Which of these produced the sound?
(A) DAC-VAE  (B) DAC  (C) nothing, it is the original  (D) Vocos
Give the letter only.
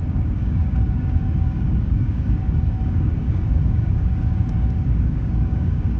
B